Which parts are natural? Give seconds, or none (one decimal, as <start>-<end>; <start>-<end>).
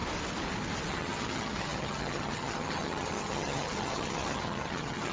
0.0-0.9